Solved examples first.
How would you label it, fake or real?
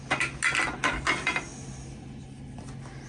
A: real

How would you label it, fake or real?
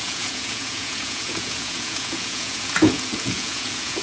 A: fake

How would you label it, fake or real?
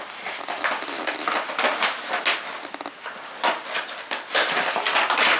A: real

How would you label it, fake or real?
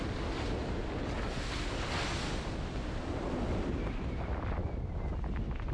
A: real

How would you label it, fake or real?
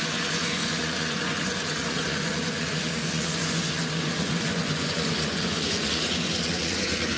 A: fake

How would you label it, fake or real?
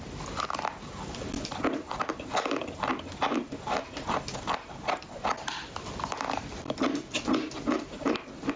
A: real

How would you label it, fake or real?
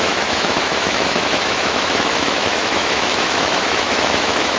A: fake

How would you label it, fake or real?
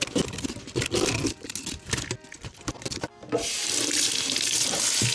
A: real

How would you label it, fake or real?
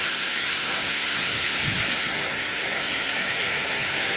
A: fake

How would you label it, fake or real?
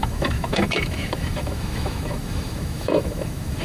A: fake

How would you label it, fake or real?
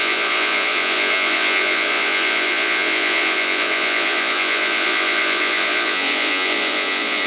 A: fake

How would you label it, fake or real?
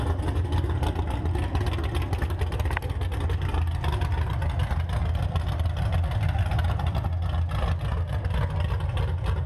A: real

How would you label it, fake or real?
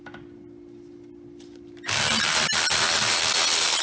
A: real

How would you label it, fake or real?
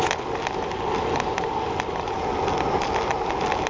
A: real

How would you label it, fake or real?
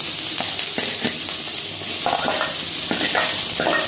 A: real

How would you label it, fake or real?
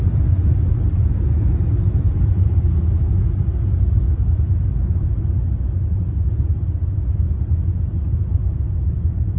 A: real